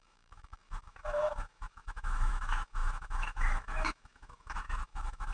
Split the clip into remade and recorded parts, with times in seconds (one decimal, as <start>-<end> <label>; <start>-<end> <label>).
0.0-5.3 remade